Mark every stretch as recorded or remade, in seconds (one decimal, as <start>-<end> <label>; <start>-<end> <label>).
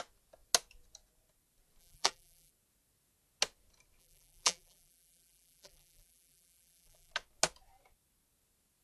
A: 0.0-1.8 recorded; 1.8-2.5 remade; 2.5-4.0 recorded; 4.0-7.1 remade; 7.1-8.8 recorded